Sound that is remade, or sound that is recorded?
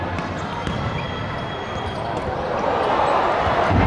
recorded